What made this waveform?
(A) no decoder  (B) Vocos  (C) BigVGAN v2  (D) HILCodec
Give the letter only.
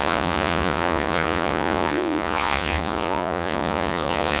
B